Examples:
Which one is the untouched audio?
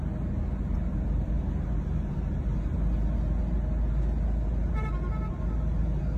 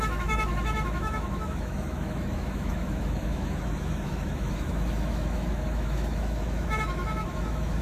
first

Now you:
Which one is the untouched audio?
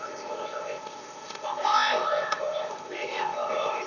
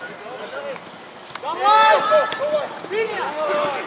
second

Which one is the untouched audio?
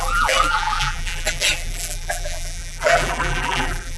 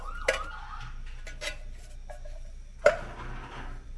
second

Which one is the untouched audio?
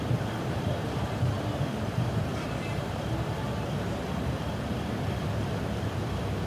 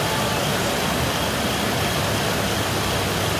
second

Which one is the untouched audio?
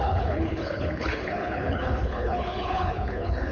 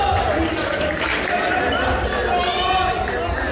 second